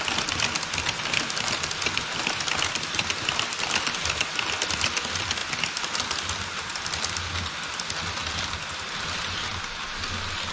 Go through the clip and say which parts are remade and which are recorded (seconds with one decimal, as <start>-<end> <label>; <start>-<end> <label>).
0.0-10.5 recorded